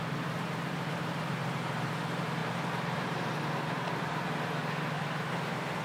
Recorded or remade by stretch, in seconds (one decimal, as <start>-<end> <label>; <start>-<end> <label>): 0.0-4.6 remade; 4.6-5.3 recorded; 5.3-5.8 remade